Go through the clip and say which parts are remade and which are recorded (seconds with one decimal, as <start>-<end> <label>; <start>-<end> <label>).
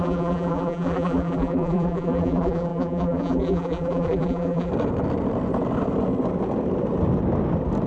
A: 0.0-4.7 remade; 4.7-7.9 recorded